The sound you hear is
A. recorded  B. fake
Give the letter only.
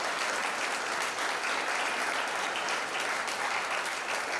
A